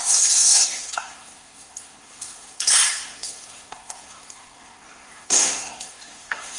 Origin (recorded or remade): remade